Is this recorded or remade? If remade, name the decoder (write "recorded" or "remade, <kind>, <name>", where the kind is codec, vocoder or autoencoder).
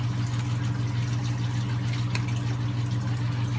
recorded